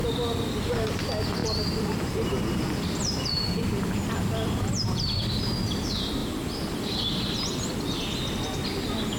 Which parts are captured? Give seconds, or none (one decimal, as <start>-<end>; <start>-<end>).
0.0-1.4; 5.5-9.2